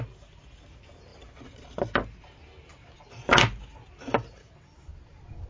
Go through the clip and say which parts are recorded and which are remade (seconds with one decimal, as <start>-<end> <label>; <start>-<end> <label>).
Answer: 0.0-5.5 recorded